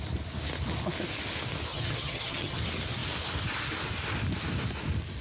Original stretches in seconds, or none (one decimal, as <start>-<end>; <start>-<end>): 0.0-1.7; 2.6-5.2